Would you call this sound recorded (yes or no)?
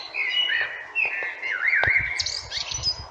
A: yes